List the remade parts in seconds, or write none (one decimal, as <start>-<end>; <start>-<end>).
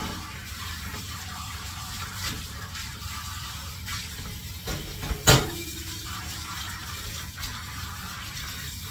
0.4-3.6; 5.7-7.2